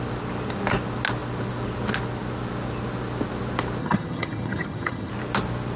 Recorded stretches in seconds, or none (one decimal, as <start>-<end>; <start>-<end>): 0.0-3.8; 5.1-5.8

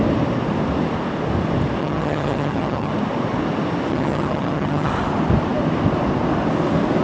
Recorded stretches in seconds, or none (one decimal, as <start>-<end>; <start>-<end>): 0.0-1.8; 2.9-3.9; 4.9-7.0

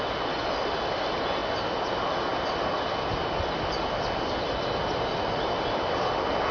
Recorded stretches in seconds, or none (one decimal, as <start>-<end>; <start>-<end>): 0.0-6.5

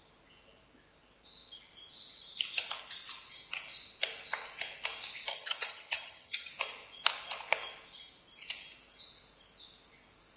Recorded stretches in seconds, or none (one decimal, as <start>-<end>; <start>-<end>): 0.0-5.3; 6.5-10.4